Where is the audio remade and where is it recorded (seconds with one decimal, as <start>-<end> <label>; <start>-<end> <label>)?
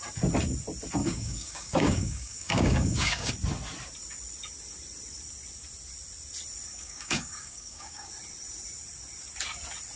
0.0-1.0 recorded; 1.0-3.3 remade; 3.3-6.7 recorded; 6.7-8.1 remade; 8.1-10.0 recorded